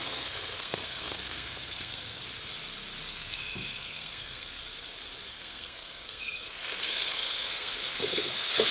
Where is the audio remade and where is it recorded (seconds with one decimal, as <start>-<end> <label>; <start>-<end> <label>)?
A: 0.0-2.2 remade; 2.2-3.1 recorded; 3.1-4.6 remade; 4.6-5.3 recorded; 5.3-8.7 remade